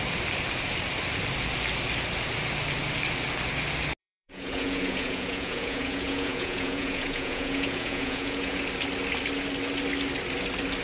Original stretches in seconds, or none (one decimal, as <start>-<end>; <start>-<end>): 0.0-4.0; 8.6-10.8